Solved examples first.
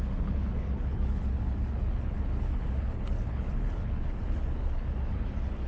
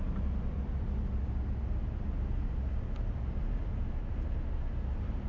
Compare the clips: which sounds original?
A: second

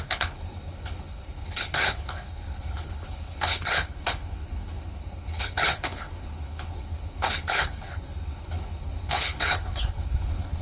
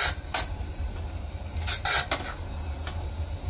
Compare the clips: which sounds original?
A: second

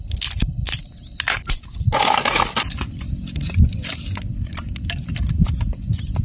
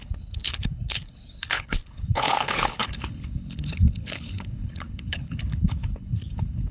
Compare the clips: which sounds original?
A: first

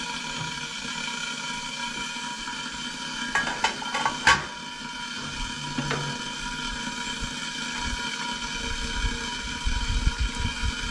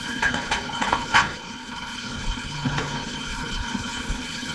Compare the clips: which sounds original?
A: first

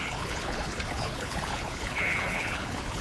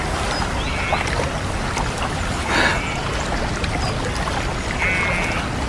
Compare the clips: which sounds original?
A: second